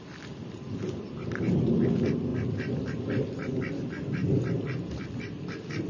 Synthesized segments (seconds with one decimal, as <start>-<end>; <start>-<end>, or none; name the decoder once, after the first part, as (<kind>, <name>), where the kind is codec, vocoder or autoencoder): none